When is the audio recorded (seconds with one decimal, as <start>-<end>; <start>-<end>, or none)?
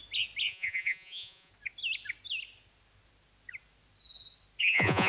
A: 0.0-0.5; 1.5-4.6